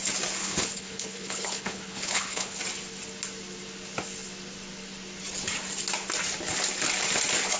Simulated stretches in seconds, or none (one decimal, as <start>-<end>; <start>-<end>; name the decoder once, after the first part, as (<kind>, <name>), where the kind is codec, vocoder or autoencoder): 0.4-2.6 (codec, HILCodec)